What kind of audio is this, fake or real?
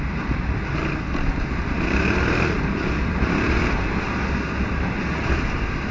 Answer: real